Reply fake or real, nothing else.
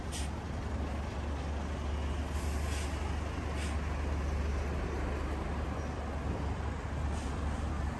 real